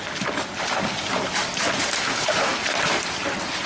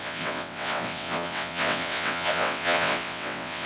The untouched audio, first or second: first